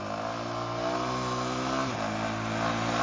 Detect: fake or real real